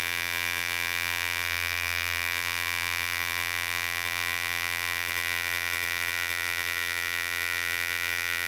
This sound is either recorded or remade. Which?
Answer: remade